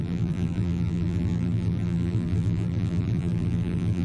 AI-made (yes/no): yes